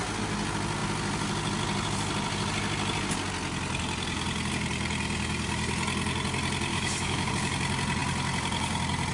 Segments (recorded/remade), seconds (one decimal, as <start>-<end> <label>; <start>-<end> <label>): 0.0-6.7 recorded; 6.7-7.3 remade; 7.3-9.1 recorded